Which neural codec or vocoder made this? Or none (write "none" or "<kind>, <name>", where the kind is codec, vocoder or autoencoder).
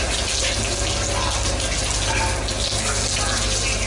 none